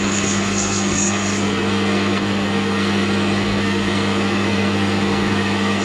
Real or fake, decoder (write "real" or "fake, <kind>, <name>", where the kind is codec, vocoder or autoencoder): fake, codec, SNAC